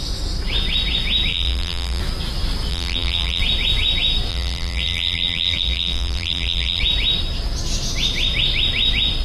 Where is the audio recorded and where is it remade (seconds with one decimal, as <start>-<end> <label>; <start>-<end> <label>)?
0.0-1.3 recorded; 1.3-2.0 remade; 2.0-2.7 recorded; 2.7-3.4 remade; 3.4-4.3 recorded; 4.3-6.8 remade; 6.8-9.2 recorded